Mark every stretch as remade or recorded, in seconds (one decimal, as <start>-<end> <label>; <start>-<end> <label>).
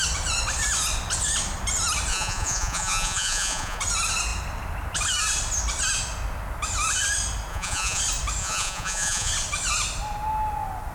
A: 0.0-2.1 recorded; 2.1-3.8 remade; 3.8-7.5 recorded; 7.5-8.0 remade; 8.0-8.4 recorded; 8.4-9.3 remade; 9.3-10.9 recorded